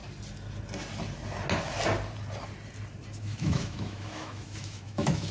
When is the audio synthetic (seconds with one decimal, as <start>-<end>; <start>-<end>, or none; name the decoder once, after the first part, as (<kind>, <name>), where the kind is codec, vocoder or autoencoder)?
3.2-5.3 (autoencoder, DAC-VAE)